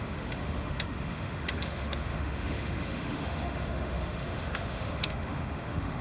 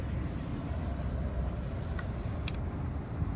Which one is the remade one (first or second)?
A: first